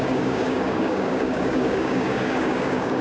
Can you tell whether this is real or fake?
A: fake